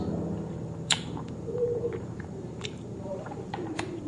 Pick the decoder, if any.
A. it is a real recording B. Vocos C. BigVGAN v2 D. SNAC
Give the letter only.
C